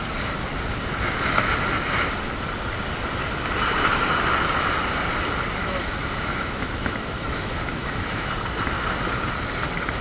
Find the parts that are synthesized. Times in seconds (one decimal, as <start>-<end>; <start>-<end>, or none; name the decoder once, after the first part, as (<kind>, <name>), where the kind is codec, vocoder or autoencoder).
5.6-8.3 (autoencoder, DAC-VAE)